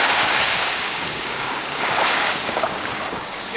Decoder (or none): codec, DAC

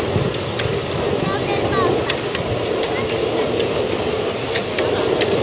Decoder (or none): none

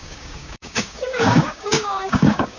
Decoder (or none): codec, DAC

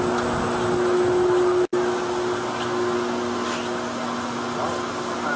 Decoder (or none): none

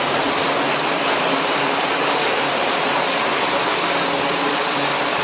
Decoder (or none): none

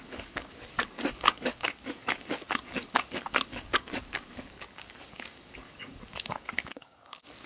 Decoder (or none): codec, DAC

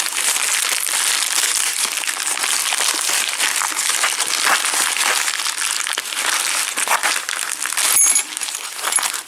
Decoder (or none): none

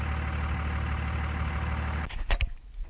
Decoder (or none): none